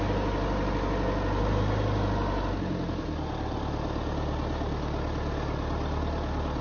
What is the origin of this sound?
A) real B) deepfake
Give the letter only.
A